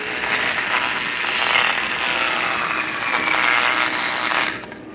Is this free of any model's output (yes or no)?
yes